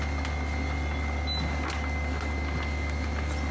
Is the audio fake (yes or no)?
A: no